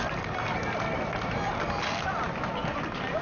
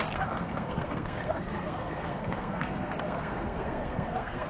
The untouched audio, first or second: first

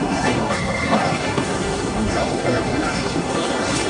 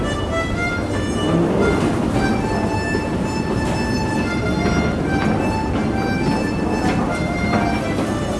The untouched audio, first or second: second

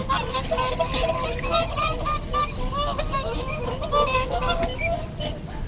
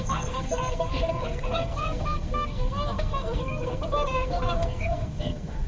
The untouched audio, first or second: first